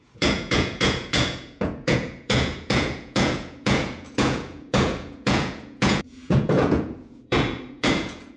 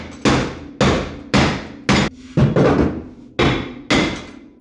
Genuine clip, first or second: second